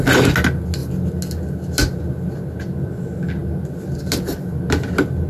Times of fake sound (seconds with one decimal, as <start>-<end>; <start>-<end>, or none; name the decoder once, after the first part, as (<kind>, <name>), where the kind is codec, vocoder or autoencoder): none